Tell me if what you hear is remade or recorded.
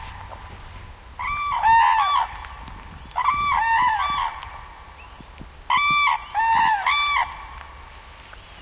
recorded